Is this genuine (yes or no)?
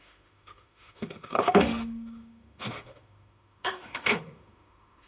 no